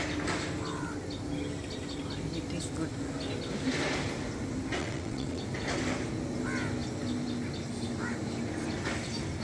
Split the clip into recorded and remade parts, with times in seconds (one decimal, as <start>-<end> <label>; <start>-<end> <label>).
0.0-4.8 recorded; 4.8-5.4 remade; 5.4-9.4 recorded